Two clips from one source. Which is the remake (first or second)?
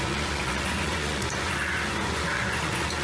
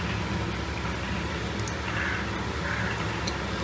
first